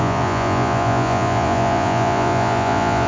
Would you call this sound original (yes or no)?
no